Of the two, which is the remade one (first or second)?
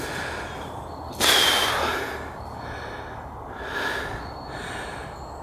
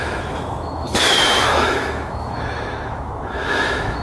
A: second